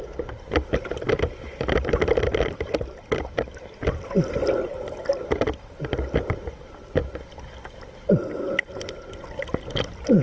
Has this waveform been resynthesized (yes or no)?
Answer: no